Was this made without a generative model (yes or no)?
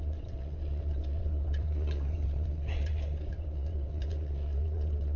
no